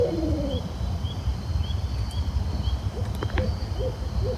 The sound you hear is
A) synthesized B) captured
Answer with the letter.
B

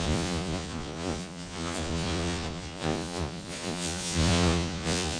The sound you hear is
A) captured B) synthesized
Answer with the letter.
B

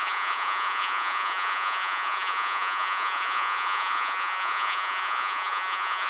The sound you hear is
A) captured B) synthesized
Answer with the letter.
B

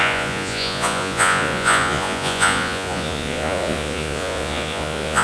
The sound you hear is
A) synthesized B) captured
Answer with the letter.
A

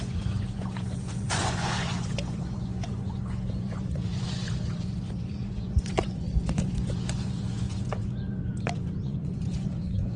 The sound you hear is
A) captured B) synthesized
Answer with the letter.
B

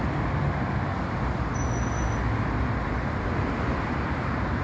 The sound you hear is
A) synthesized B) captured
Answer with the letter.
B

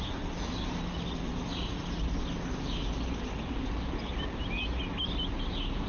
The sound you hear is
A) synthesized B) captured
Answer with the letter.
B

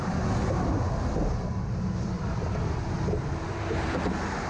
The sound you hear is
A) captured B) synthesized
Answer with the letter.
A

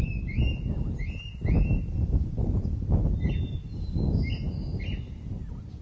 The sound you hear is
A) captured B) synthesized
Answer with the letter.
A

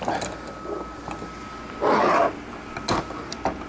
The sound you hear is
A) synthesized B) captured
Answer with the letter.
B